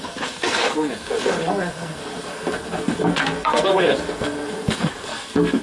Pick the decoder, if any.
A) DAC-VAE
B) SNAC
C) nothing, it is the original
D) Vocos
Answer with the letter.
B